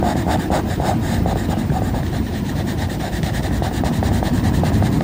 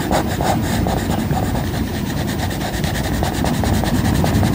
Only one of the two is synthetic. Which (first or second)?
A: first